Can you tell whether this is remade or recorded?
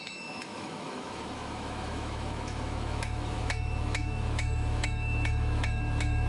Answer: remade